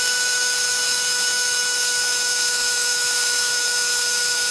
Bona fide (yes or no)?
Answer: no